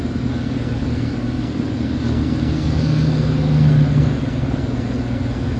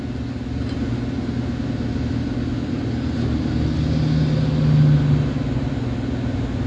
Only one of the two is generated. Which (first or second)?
first